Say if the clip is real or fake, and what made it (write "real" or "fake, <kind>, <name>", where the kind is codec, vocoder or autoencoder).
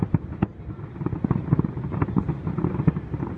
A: real